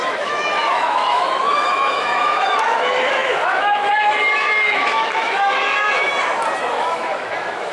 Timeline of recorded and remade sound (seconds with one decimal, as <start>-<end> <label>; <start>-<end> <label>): 0.0-6.1 remade; 6.1-6.6 recorded; 6.6-7.7 remade